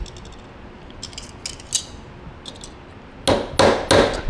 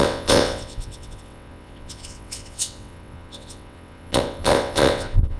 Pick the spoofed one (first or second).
second